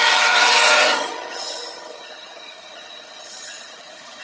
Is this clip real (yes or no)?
no